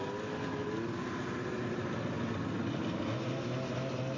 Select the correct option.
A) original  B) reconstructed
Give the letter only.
A